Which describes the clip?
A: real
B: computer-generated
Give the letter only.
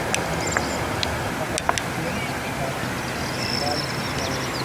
A